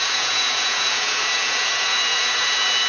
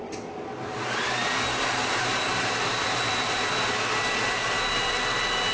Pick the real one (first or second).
second